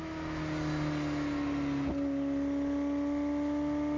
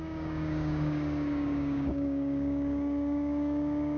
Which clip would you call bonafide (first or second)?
first